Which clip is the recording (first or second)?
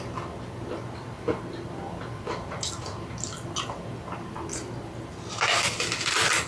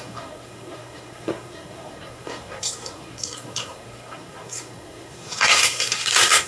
first